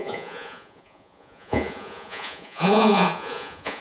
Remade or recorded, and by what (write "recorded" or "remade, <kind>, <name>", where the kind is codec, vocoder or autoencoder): remade, vocoder, Vocos